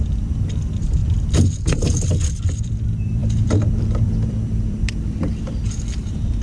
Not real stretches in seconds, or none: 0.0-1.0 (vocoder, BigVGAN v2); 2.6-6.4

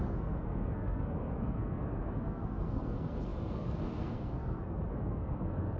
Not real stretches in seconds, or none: 0.0-5.8 (codec, SNAC)

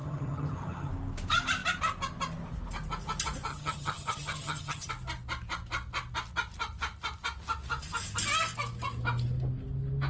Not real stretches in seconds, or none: 0.0-0.9 (vocoder, HiFi-GAN); 3.5-4.9

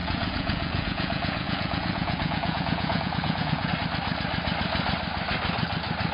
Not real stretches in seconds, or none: 0.0-3.7 (vocoder, Vocos)

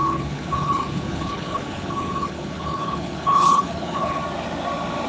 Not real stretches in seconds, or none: 0.0-4.2 (codec, HILCodec)